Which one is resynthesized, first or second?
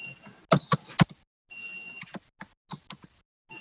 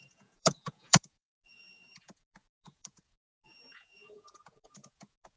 second